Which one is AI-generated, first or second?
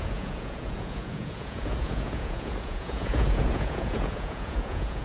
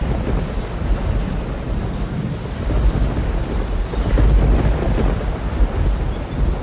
first